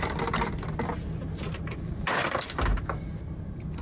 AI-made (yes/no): no